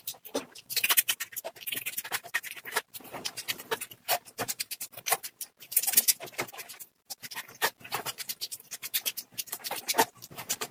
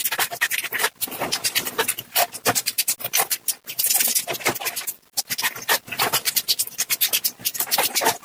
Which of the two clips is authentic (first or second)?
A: second